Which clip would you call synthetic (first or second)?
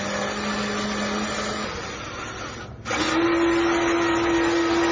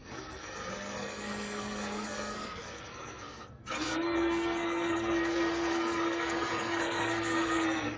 second